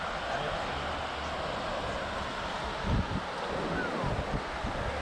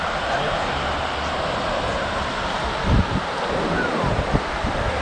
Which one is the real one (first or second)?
first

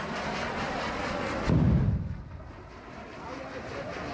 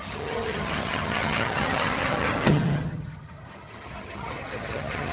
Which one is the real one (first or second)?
first